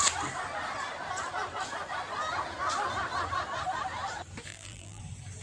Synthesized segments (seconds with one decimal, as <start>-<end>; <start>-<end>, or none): 4.5-5.0